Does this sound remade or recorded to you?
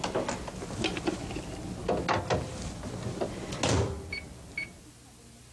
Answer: recorded